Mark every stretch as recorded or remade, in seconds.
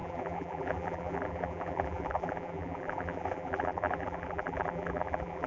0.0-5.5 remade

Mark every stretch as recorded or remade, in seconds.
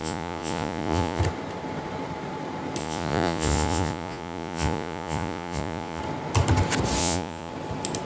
0.0-1.2 remade; 1.2-2.8 recorded; 2.8-6.0 remade; 6.0-7.0 recorded; 7.0-7.5 remade; 7.5-8.0 recorded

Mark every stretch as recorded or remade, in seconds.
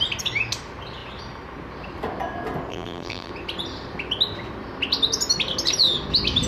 0.0-2.7 recorded; 2.7-3.3 remade; 3.3-6.5 recorded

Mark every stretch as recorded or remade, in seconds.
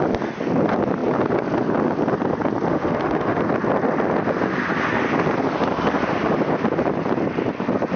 0.0-2.7 recorded; 2.7-3.4 remade; 3.4-8.0 recorded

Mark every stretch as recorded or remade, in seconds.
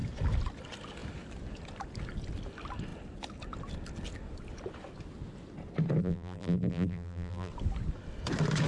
0.0-6.0 recorded; 6.0-7.5 remade; 7.5-8.7 recorded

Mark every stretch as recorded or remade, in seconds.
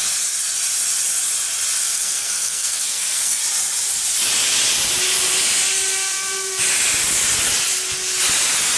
0.0-1.8 recorded; 1.8-3.4 remade; 3.4-8.8 recorded